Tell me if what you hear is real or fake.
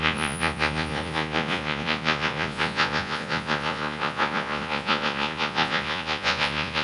fake